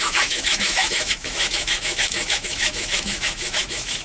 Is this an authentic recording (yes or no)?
no